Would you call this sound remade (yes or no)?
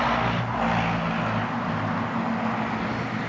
no